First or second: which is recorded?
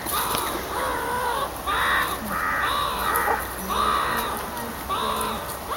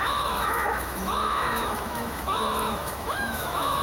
first